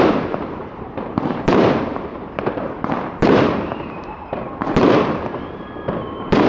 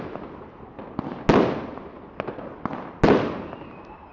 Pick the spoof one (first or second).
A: first